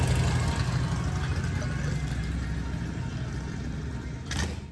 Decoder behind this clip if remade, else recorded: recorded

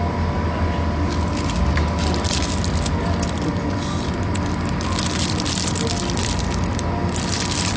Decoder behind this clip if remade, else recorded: recorded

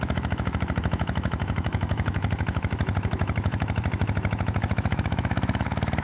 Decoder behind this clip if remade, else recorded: remade, autoencoder, DAC-VAE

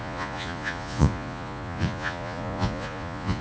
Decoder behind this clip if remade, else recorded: remade, vocoder, Vocos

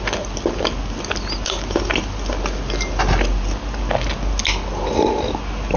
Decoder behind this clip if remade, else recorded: recorded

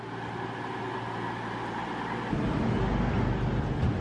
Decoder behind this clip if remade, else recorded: recorded